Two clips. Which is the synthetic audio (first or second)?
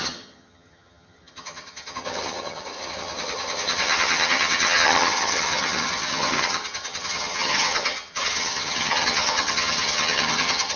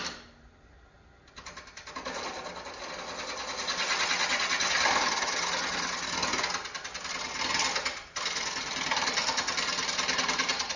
first